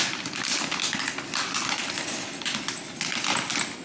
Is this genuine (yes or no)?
yes